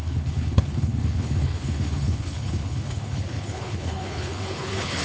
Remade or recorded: remade